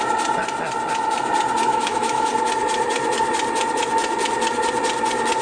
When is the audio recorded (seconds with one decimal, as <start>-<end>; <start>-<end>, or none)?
0.0-1.7; 2.3-5.4